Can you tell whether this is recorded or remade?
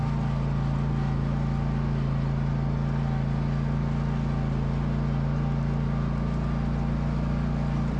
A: recorded